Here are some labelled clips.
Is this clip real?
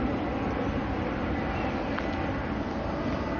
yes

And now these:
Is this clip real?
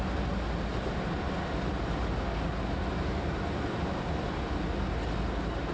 yes